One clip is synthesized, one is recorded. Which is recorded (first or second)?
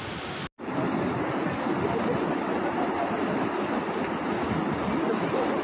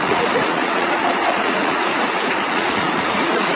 first